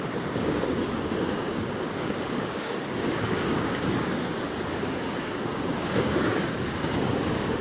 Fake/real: fake